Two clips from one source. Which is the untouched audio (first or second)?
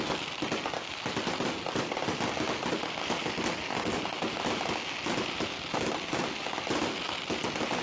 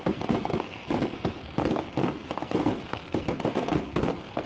first